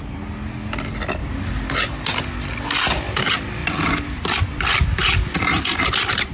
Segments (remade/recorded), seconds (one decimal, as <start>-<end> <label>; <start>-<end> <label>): 0.0-1.2 recorded; 1.2-1.8 remade; 1.8-3.6 recorded; 3.6-4.2 remade; 4.2-5.0 recorded; 5.0-6.3 remade